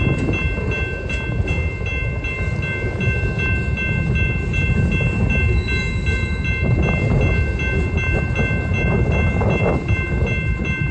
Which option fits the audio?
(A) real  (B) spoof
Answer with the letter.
A